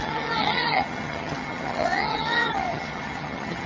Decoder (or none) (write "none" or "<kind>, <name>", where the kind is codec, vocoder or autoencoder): vocoder, HiFi-GAN